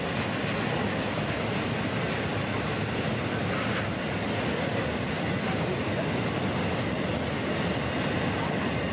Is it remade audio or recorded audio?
recorded